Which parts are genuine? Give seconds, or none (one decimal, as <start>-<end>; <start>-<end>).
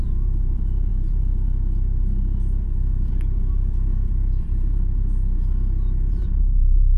5.4-6.1